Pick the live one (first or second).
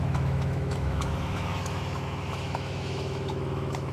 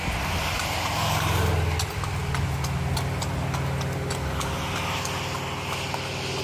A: second